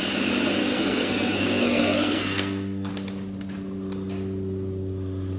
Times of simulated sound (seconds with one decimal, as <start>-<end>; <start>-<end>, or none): 0.6-2.9